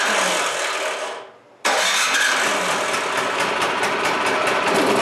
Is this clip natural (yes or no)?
yes